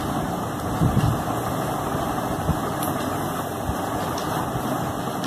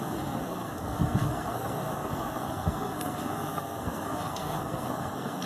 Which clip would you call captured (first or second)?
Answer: first